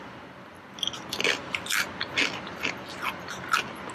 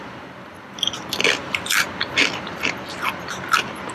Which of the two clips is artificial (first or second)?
second